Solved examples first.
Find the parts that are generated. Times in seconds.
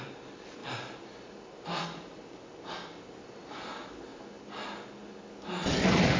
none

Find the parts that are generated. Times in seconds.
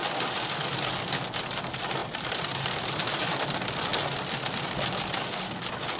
2.0-3.3 (vocoder, BigVGAN v2)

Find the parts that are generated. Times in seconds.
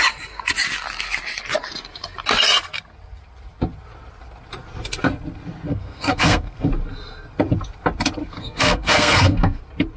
5.7-6.7 (codec, SNAC); 8.2-9.6